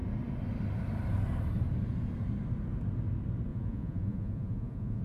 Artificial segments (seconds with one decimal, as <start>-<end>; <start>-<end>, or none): 3.5-5.0